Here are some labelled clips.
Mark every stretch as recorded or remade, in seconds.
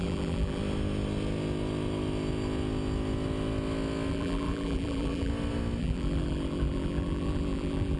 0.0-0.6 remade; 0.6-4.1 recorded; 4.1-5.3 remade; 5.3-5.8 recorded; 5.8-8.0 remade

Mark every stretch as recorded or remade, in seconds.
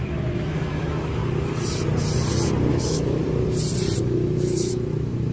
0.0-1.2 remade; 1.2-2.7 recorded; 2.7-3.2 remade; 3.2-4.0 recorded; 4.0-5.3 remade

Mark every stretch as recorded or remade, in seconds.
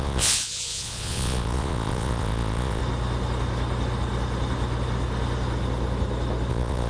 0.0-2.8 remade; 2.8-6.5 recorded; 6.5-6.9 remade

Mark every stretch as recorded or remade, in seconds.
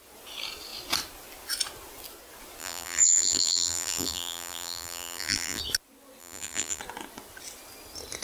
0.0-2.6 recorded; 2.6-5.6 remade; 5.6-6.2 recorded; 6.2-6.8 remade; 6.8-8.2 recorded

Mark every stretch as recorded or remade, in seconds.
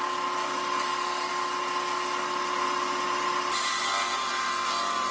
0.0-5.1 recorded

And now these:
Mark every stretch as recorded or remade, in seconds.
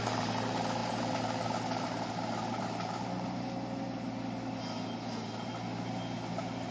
0.0-6.7 recorded